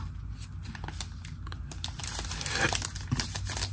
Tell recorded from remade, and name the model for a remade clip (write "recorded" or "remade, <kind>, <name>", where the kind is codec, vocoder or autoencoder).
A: recorded